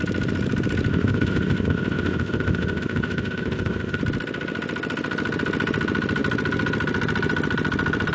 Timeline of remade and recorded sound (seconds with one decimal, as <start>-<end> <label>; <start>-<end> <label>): 0.0-0.9 recorded; 0.9-4.0 remade; 4.0-8.1 recorded